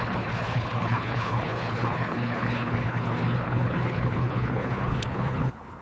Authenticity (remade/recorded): remade